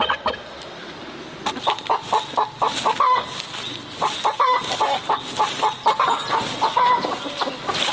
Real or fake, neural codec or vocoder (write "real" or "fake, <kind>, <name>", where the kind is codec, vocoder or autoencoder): real